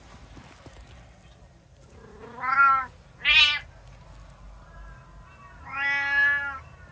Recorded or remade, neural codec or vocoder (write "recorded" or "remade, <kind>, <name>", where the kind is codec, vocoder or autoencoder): recorded